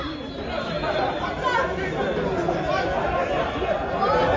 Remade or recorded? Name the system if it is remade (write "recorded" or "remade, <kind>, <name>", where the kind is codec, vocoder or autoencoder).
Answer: recorded